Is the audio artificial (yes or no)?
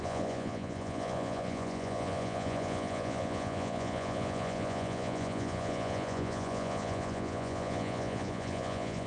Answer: yes